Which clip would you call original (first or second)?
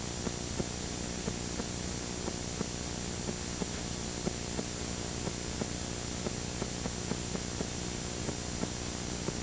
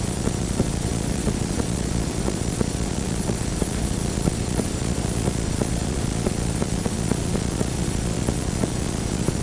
first